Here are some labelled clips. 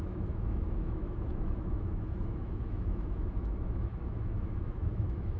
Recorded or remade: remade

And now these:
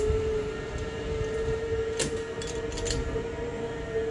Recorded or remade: recorded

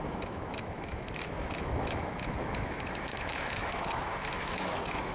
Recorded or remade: remade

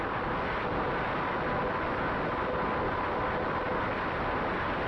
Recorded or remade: recorded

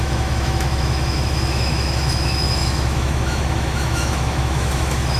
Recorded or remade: remade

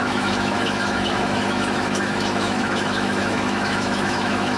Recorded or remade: remade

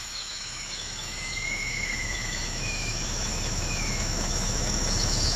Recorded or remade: remade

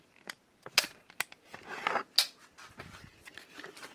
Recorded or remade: recorded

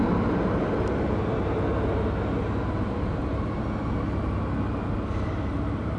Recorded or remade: recorded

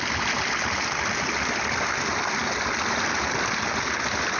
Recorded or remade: recorded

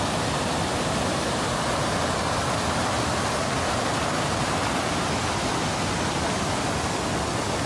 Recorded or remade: recorded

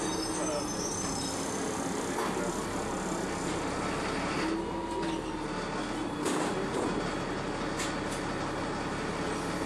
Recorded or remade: recorded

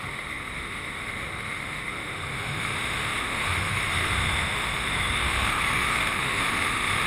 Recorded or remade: remade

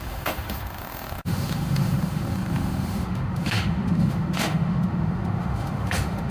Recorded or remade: remade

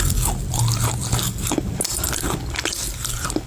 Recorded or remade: recorded